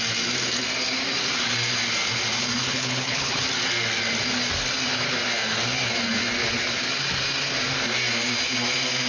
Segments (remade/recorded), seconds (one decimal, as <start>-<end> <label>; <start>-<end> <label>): 0.0-2.6 recorded; 2.6-3.4 remade; 3.4-9.1 recorded